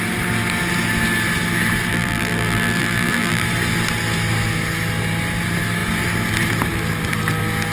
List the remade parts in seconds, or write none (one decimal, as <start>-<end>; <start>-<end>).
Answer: 1.9-3.4